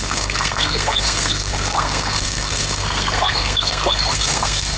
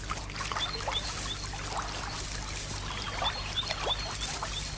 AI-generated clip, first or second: first